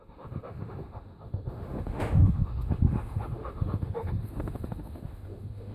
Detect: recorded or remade remade